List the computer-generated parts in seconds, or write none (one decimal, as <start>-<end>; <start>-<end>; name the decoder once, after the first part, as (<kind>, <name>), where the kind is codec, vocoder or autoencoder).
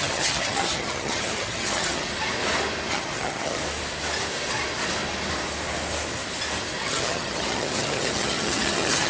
0.0-2.1 (vocoder, HiFi-GAN); 2.9-3.6; 6.8-9.1